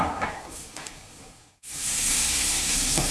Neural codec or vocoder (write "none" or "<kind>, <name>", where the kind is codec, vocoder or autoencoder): codec, SNAC